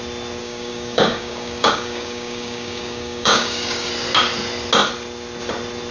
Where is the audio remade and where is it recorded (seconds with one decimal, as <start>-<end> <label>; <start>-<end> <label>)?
0.0-0.4 recorded; 0.4-3.9 remade; 3.9-5.9 recorded